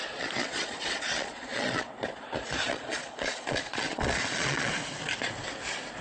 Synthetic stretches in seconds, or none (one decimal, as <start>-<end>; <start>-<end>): 0.0-1.9; 2.7-4.7